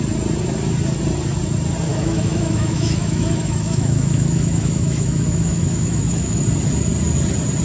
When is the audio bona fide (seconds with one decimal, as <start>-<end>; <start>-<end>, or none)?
0.0-1.9; 6.4-7.6